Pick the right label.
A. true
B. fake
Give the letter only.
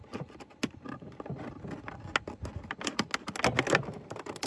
A